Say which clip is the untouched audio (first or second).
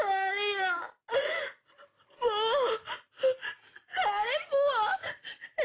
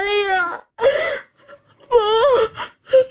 first